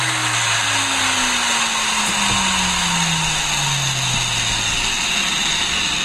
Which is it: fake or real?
real